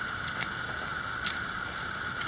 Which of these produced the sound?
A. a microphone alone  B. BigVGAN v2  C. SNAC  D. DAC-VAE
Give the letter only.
A